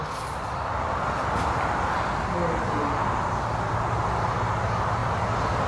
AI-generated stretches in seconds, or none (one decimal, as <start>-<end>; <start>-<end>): none

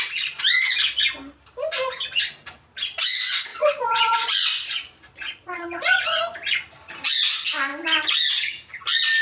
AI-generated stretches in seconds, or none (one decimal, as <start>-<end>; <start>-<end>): 3.5-6.2